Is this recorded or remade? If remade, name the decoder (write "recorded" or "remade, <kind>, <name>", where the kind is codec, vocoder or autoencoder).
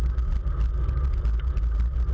recorded